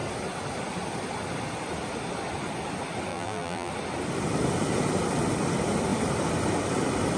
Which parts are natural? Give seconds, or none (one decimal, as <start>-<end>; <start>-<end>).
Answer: 0.0-3.1; 3.7-7.2